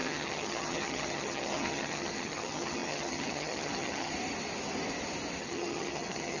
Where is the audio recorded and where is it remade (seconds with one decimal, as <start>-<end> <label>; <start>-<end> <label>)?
0.0-4.1 remade; 4.1-5.4 recorded; 5.4-6.4 remade